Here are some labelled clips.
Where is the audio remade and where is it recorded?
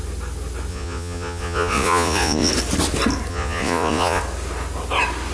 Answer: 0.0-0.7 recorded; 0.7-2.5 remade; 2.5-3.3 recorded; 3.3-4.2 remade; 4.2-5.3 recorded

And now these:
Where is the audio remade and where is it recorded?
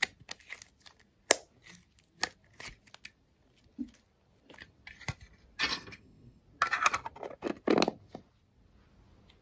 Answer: 0.0-5.7 recorded; 5.7-6.4 remade; 6.4-9.4 recorded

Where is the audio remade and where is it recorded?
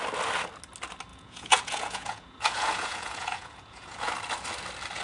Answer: 0.0-1.1 recorded; 1.1-4.1 remade; 4.1-5.0 recorded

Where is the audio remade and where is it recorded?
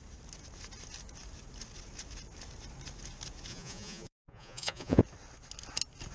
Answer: 0.0-3.5 recorded; 3.5-5.0 remade; 5.0-6.1 recorded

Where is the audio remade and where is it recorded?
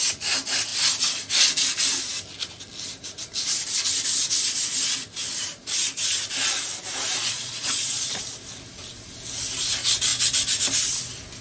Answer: 0.0-7.2 recorded; 7.2-8.2 remade; 8.2-11.4 recorded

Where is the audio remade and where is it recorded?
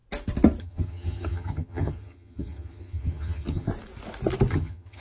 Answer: 0.0-0.6 recorded; 0.6-3.7 remade; 3.7-4.5 recorded; 4.5-5.0 remade